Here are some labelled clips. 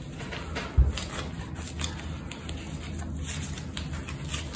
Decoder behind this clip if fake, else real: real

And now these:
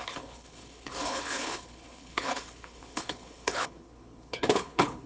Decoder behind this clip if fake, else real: fake, codec, HILCodec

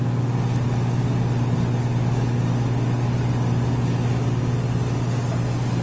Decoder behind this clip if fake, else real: real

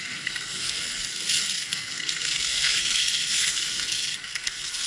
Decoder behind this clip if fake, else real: fake, codec, SNAC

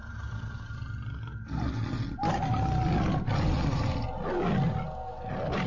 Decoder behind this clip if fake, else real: real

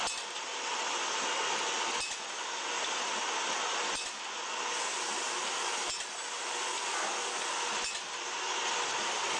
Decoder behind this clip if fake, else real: real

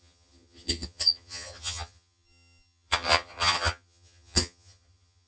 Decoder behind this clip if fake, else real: fake, vocoder, HiFi-GAN